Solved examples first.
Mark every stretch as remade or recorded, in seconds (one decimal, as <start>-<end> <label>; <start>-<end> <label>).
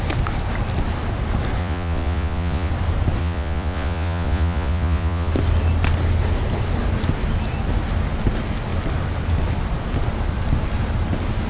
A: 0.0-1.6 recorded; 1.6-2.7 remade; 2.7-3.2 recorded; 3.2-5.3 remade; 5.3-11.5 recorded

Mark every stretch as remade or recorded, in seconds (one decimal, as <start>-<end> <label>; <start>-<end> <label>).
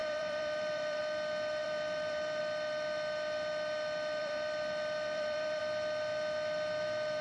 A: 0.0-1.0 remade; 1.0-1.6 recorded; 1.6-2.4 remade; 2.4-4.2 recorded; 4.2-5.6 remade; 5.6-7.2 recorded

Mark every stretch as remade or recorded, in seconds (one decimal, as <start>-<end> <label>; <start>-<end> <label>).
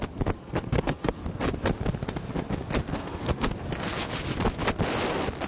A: 0.0-0.4 recorded; 0.4-1.2 remade; 1.2-3.0 recorded; 3.0-3.5 remade; 3.5-5.5 recorded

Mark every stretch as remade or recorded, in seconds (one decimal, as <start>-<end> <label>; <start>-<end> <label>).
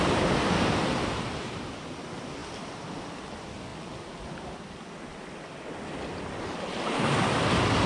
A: 0.0-7.9 recorded